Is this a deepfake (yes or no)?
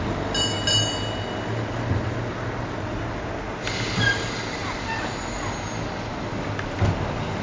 no